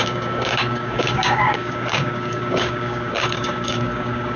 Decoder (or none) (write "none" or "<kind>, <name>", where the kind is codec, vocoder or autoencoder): codec, DAC